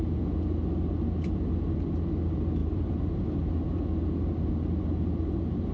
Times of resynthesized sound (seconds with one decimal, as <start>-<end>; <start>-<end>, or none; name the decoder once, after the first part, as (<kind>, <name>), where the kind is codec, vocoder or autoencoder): 2.6-3.2 (vocoder, BigVGAN v2)